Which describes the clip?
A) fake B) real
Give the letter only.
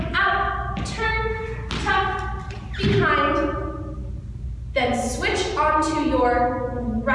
B